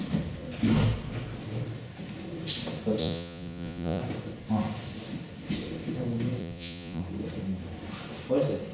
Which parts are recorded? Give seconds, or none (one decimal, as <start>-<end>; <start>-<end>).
0.0-3.0; 4.0-6.4; 7.0-8.7